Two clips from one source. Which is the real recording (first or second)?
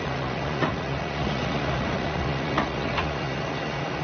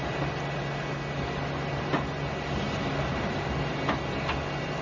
second